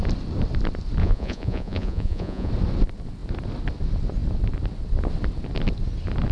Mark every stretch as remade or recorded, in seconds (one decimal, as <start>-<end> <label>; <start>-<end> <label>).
0.0-1.0 recorded; 1.0-2.5 remade; 2.5-6.3 recorded